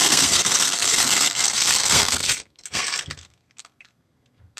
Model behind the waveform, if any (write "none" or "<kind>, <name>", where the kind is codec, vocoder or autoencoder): codec, SNAC